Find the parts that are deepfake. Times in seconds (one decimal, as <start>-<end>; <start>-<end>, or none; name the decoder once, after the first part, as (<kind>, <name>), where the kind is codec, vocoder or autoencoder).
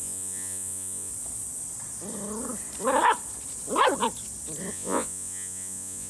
0.0-1.1 (vocoder, Vocos); 4.7-6.1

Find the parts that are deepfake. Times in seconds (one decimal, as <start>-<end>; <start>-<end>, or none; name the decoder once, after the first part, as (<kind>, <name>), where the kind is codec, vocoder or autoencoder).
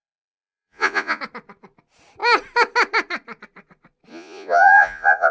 0.0-1.2 (vocoder, Vocos); 4.1-5.3